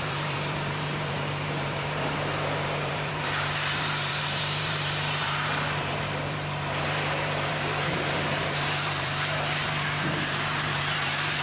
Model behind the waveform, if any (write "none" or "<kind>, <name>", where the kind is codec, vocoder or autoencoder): vocoder, BigVGAN v2